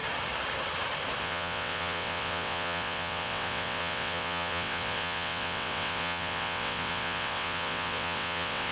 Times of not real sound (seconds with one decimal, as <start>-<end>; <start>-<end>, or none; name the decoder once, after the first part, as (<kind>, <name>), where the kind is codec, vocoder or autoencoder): 1.2-8.7 (vocoder, WaveNeXt)